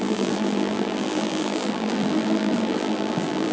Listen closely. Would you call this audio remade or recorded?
remade